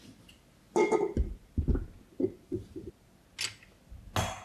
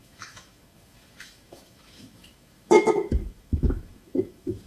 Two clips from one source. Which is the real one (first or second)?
first